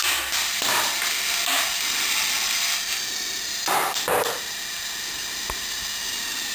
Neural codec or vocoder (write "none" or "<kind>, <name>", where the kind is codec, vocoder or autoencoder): none